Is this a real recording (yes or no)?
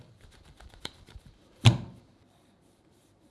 no